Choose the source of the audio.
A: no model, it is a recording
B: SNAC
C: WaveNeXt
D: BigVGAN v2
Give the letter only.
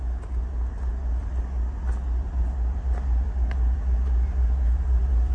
A